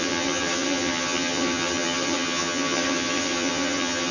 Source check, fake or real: fake